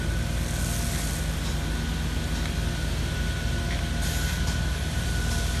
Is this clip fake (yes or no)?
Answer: no